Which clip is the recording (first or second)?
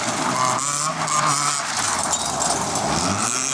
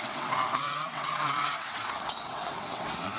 first